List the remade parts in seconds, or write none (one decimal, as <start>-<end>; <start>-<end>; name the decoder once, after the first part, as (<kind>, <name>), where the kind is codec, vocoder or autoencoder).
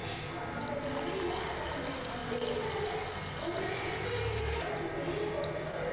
none